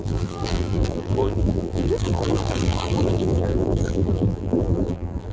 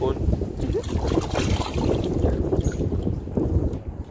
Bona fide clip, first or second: second